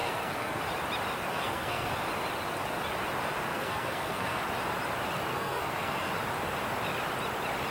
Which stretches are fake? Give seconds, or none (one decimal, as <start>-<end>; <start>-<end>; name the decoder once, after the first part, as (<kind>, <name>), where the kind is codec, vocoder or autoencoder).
0.0-0.6 (codec, SNAC); 1.3-1.9; 3.5-4.4; 5.3-6.1